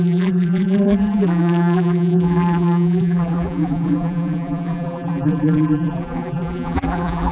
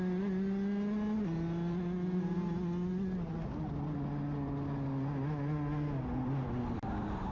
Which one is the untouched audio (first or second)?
second